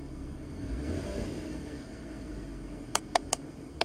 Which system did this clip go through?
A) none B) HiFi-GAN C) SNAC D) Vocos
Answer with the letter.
C